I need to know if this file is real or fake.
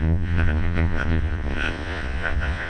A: fake